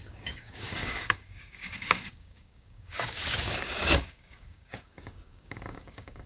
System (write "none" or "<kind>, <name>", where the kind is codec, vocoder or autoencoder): codec, DAC